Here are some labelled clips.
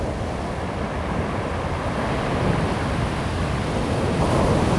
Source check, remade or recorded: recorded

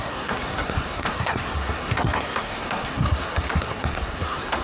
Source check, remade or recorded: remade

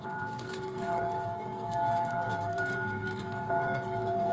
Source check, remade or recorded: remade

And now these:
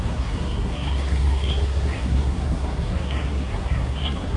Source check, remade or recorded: remade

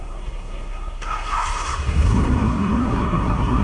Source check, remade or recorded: remade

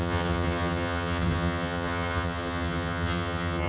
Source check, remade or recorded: remade